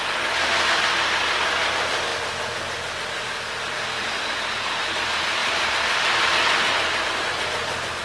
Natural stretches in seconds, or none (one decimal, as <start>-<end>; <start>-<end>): 0.0-5.4